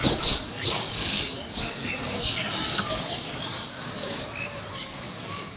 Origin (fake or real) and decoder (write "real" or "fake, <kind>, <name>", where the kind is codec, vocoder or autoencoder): fake, codec, DAC